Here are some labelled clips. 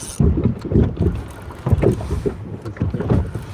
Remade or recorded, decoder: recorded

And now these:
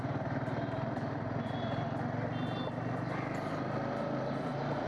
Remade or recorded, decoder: recorded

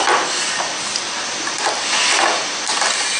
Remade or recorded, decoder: recorded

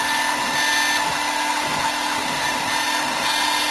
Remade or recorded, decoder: recorded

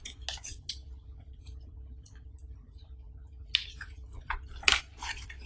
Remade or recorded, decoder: recorded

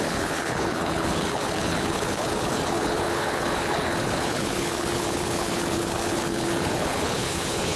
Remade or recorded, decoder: remade, codec, HILCodec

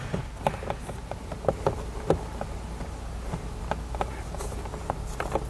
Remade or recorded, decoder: recorded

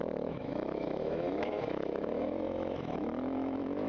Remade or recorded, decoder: remade, autoencoder, DAC-VAE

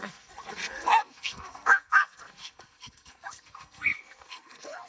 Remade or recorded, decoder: remade, codec, SNAC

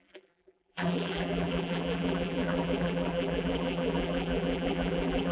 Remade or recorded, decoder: remade, vocoder, BigVGAN v2